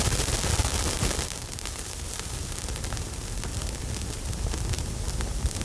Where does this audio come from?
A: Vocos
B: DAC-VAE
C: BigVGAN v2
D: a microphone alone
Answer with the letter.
D